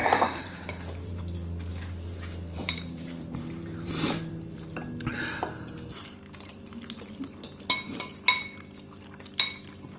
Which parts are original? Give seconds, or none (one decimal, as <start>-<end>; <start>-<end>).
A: 1.2-1.7; 4.3-10.0

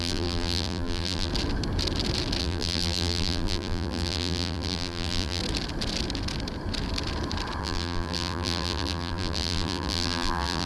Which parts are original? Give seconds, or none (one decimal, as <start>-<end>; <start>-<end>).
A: 1.3-2.4; 5.4-7.6

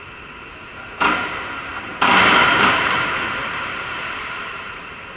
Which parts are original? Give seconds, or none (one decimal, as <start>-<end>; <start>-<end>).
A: 0.0-1.7; 4.8-5.2

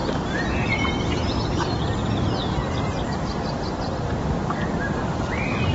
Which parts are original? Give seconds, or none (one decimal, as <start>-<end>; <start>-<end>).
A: 0.0-0.7; 2.0-5.7

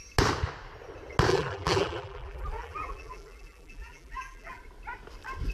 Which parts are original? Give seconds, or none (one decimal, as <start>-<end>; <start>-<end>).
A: 0.0-1.3; 4.6-5.5

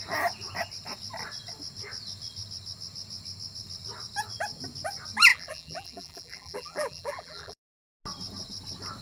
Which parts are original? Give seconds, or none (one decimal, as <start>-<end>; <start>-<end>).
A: 0.0-5.3; 7.6-9.0